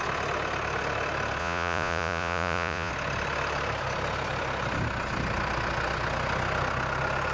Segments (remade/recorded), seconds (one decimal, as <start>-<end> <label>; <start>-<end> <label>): 0.0-1.4 recorded; 1.4-2.9 remade; 2.9-7.3 recorded